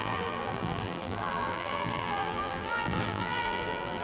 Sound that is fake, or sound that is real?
fake